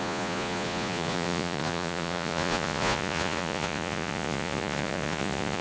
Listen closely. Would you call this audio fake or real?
fake